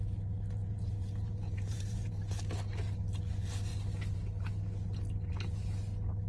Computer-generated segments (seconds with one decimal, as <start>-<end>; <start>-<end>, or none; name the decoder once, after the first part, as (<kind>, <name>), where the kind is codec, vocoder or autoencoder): 0.6-2.1 (vocoder, Vocos)